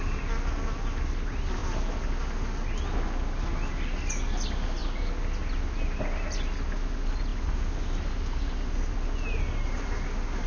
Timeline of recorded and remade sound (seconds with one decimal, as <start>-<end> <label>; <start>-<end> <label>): 0.0-10.5 recorded

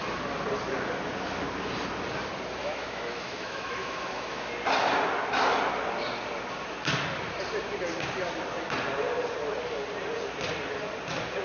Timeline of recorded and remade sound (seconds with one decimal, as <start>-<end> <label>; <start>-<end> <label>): 0.0-2.6 recorded; 2.6-4.5 remade; 4.5-11.4 recorded

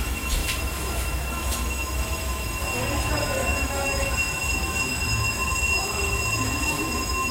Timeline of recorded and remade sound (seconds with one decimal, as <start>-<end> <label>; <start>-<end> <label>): 0.0-0.4 remade; 0.4-1.3 recorded; 1.3-2.6 remade; 2.6-3.1 recorded; 3.1-7.3 remade